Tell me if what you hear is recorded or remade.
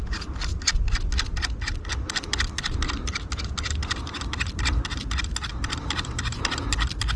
recorded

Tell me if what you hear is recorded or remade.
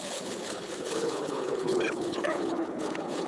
remade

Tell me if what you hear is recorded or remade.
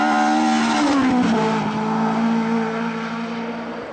recorded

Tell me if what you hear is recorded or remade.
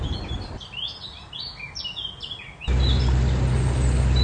recorded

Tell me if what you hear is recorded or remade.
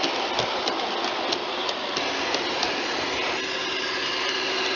recorded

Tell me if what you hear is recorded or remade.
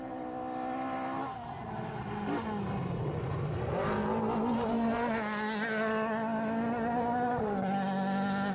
recorded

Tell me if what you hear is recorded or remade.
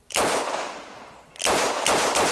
recorded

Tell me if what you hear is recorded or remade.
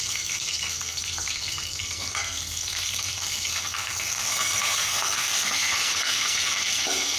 remade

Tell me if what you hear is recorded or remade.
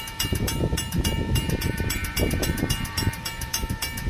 remade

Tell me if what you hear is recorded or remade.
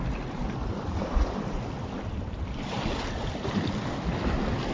recorded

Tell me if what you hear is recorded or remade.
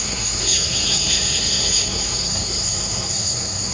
remade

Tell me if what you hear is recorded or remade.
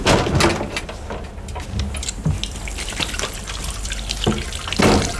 recorded